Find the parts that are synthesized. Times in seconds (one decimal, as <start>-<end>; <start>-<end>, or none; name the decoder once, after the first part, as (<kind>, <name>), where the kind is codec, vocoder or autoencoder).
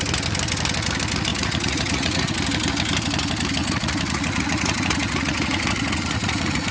1.3-2.3 (vocoder, Vocos); 3.6-6.7